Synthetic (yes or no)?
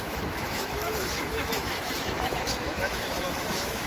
yes